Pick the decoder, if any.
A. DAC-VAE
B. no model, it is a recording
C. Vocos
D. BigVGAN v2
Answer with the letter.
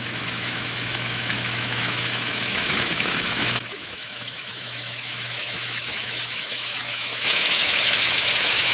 A